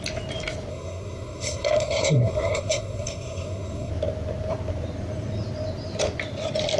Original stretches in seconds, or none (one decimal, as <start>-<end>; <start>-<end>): 0.0-0.7; 3.9-6.8